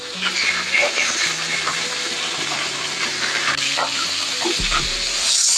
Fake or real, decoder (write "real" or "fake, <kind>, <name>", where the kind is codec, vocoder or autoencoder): fake, vocoder, BigVGAN v2